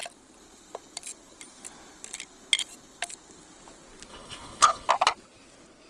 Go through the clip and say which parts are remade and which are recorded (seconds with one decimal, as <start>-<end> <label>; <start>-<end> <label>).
0.0-4.1 recorded; 4.1-4.9 remade; 4.9-5.9 recorded